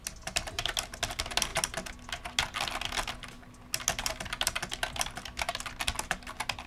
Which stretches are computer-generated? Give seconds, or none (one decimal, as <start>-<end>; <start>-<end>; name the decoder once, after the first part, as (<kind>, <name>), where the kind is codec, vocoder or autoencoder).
none

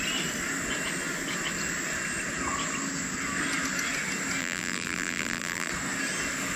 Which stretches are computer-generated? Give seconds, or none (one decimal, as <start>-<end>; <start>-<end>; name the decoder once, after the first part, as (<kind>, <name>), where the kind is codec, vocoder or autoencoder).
4.4-5.7 (vocoder, BigVGAN v2)

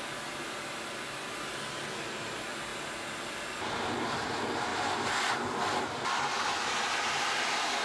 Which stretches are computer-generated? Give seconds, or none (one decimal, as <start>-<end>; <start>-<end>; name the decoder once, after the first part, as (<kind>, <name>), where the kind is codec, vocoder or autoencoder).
0.0-2.7 (vocoder, BigVGAN v2); 3.3-4.7; 5.8-7.8

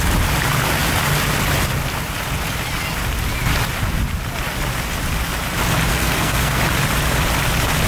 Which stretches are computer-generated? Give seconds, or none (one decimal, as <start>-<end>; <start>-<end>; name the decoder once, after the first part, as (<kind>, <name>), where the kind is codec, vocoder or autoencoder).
5.9-6.6 (codec, SNAC)

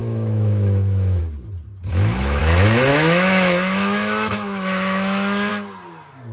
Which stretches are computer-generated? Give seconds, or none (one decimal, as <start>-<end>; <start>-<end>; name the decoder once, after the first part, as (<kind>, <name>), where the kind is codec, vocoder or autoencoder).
0.0-1.2 (autoencoder, DAC-VAE); 1.9-2.4; 2.9-5.5

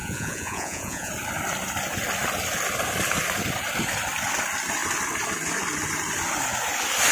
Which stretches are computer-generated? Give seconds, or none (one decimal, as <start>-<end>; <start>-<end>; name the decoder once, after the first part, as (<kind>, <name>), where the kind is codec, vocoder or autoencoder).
0.0-1.1 (vocoder, Vocos)

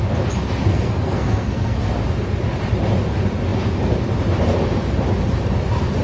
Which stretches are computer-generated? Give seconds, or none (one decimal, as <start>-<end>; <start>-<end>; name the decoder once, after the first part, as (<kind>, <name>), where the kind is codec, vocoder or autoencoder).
0.7-1.9 (codec, SNAC)